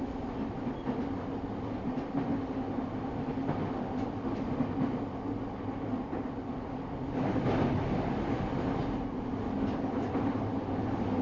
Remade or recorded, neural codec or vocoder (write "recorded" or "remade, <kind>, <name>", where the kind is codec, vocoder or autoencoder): recorded